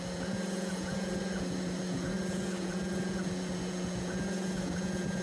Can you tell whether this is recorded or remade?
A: remade